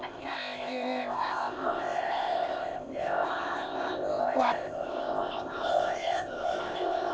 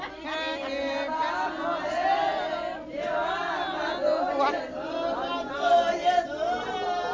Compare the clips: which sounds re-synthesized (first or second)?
first